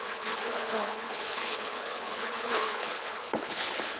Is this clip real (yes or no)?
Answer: no